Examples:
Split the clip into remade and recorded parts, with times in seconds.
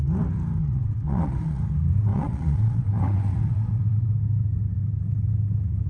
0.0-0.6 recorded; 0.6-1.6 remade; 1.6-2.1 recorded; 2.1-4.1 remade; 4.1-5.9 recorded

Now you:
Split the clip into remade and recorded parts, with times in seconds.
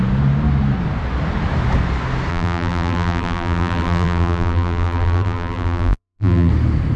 0.0-2.3 recorded; 2.3-6.5 remade; 6.5-7.0 recorded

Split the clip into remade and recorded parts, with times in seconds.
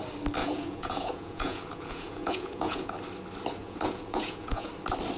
0.0-0.4 recorded; 0.4-2.9 remade; 2.9-3.6 recorded; 3.6-4.7 remade; 4.7-5.2 recorded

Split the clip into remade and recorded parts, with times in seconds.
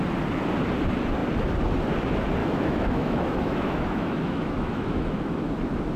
0.0-2.4 recorded; 2.4-5.5 remade; 5.5-6.0 recorded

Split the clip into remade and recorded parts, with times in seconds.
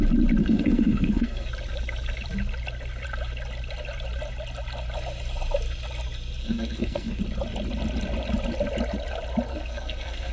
0.0-0.4 recorded; 0.4-1.5 remade; 1.5-6.4 recorded; 6.4-7.2 remade; 7.2-9.5 recorded; 9.5-10.3 remade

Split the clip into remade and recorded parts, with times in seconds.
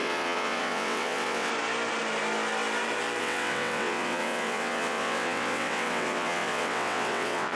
0.0-1.5 remade; 1.5-3.2 recorded; 3.2-7.6 remade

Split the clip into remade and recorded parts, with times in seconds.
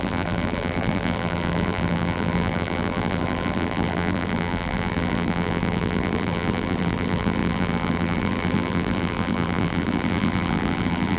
0.0-11.2 remade